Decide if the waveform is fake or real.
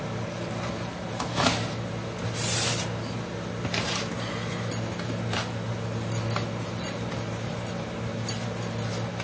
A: real